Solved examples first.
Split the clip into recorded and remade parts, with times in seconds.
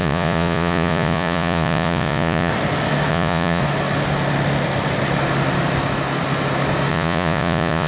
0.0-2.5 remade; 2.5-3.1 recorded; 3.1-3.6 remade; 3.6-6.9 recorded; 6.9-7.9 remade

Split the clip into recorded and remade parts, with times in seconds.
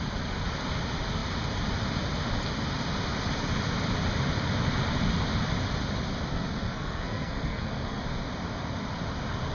0.0-6.3 recorded; 6.3-8.0 remade; 8.0-9.5 recorded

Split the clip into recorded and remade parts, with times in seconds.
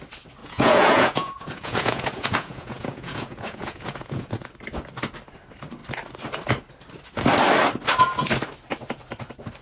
0.0-0.4 recorded; 0.4-4.5 remade; 4.5-9.6 recorded